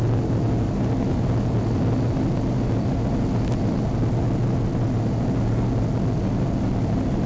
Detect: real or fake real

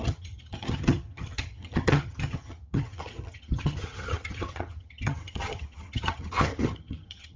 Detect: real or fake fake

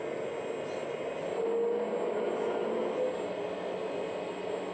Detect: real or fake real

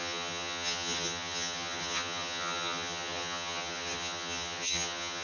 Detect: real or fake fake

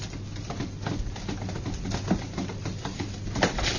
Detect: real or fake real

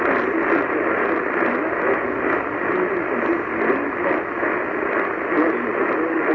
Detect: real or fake real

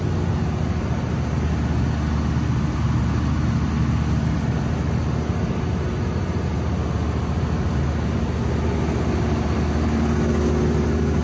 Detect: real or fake real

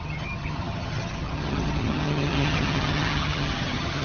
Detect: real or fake fake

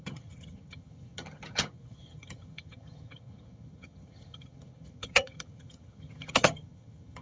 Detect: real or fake fake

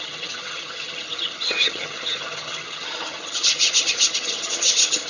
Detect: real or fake fake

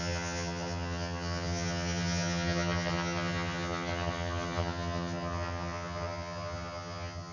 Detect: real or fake fake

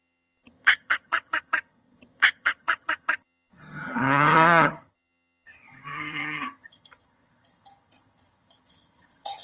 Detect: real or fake fake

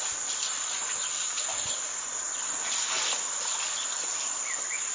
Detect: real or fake real